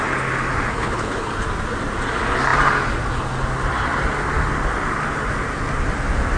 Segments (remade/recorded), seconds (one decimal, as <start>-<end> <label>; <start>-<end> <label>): 0.0-0.7 recorded; 0.7-1.3 remade; 1.3-6.4 recorded